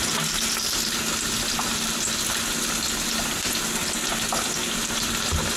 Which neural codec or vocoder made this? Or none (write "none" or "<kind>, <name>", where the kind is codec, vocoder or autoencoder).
none